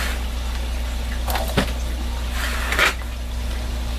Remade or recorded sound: recorded